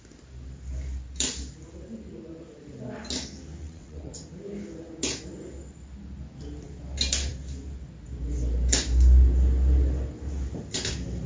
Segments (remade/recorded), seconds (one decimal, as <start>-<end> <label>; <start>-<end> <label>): 0.0-3.6 recorded; 3.6-4.1 remade; 4.1-11.3 recorded